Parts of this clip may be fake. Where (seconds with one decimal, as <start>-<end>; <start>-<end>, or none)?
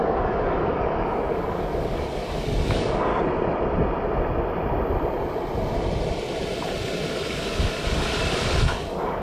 0.0-3.1; 7.1-9.2